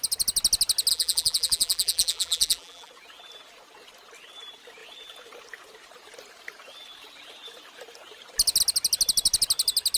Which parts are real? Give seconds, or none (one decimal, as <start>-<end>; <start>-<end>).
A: 0.0-0.9; 2.9-10.0